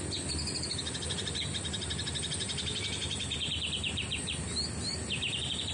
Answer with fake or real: real